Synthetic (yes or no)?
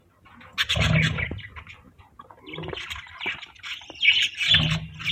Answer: no